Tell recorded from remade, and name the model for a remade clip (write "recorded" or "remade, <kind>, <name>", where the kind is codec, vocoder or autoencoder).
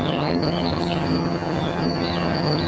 remade, vocoder, HiFi-GAN